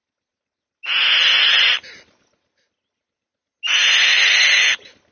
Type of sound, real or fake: real